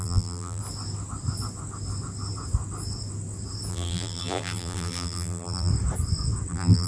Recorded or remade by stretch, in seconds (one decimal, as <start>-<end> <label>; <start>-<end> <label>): 0.0-0.6 remade; 0.6-3.7 recorded; 3.7-5.7 remade; 5.7-6.5 recorded; 6.5-6.9 remade